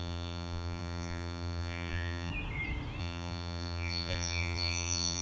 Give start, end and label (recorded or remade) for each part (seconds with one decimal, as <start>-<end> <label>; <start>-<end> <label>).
0.0-2.3 remade; 2.3-3.0 recorded; 3.0-5.2 remade